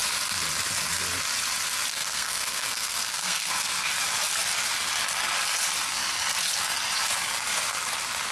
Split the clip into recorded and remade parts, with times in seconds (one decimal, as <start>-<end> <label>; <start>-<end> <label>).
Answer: 0.0-1.9 recorded; 1.9-3.9 remade; 3.9-8.3 recorded